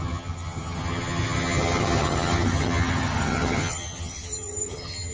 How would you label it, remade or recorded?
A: remade